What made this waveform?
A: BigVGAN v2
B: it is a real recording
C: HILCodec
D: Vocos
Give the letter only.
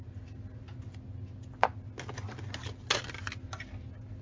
B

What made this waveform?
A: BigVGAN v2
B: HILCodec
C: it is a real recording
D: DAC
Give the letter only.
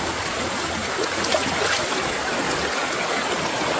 C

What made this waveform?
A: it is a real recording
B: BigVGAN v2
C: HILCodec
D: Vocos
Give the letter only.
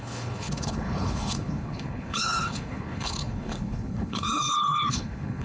C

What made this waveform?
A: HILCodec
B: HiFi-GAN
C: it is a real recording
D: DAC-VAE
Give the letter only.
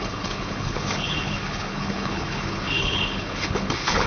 A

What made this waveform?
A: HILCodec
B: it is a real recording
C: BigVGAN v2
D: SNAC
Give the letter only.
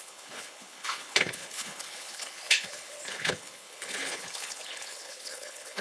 A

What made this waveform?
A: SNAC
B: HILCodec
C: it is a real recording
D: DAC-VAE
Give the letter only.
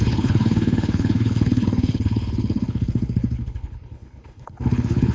B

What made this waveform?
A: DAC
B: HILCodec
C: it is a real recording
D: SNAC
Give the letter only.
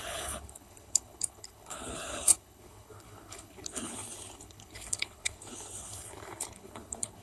B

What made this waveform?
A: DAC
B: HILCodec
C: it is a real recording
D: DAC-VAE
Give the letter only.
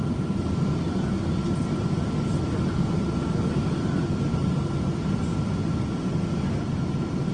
C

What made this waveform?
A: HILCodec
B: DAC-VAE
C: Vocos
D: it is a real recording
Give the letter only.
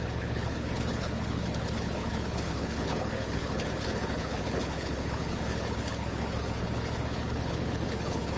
A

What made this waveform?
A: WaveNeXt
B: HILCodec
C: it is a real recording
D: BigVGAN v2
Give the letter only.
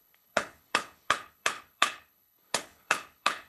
B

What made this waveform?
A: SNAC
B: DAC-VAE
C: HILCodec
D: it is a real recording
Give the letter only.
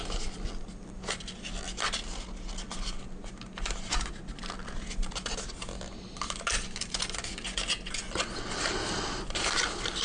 D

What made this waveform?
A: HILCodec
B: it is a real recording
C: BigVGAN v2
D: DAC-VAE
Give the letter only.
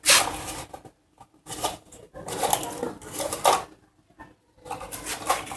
B